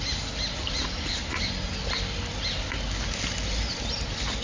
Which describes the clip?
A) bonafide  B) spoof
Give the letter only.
A